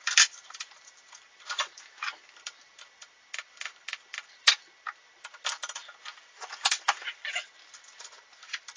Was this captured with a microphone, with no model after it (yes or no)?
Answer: no